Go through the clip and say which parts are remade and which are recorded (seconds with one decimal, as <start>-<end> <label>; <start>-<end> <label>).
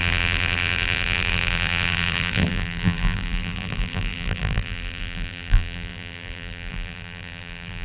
0.0-7.8 remade